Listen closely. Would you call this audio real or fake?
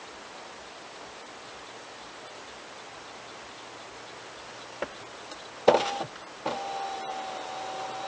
real